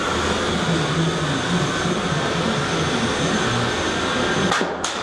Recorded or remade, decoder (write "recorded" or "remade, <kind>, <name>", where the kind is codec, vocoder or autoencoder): recorded